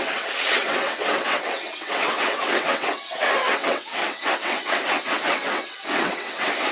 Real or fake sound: fake